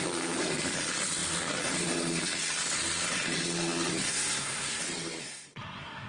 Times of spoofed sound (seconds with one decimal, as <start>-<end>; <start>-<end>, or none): 4.1-4.8; 5.2-6.1